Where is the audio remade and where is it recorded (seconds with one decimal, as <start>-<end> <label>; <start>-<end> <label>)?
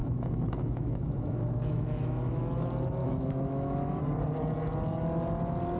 0.0-2.4 remade; 2.4-3.0 recorded; 3.0-4.0 remade; 4.0-5.8 recorded